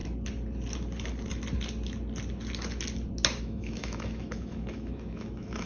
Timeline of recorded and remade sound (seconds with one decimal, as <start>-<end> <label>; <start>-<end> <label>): 0.0-3.4 recorded; 3.4-5.7 remade

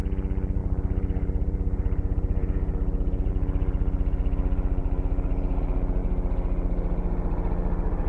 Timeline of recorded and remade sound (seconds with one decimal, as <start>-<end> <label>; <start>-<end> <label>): 0.0-0.6 recorded; 0.6-3.3 remade; 3.3-8.1 recorded